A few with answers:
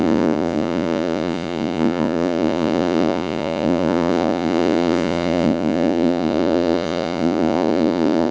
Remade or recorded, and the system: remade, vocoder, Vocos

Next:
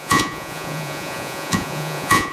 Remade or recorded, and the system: remade, vocoder, Vocos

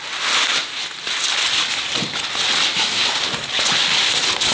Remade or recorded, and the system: recorded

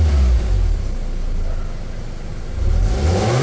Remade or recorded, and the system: recorded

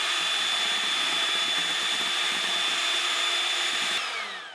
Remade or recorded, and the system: recorded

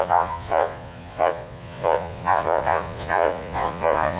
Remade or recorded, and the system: remade, vocoder, Vocos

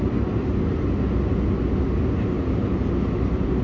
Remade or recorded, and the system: recorded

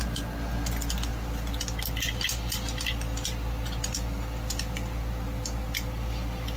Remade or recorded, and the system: recorded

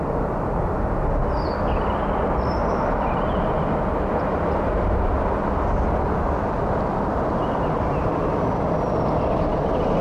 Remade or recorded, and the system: recorded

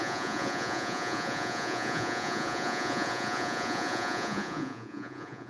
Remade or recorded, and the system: remade, vocoder, Vocos